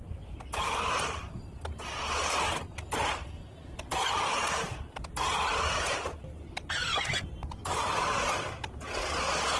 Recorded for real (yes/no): yes